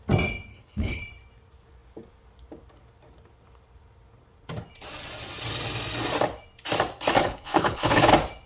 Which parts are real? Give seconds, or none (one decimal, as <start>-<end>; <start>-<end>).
0.0-0.5; 1.0-7.2; 8.1-8.5